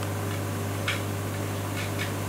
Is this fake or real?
real